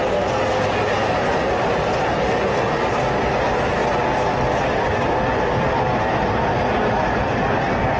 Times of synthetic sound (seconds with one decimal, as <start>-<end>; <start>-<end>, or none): none